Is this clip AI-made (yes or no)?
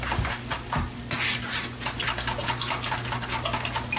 no